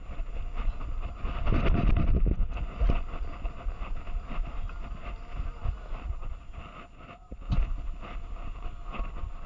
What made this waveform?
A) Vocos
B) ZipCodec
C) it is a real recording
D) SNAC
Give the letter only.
C